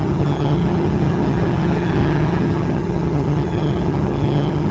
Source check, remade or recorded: remade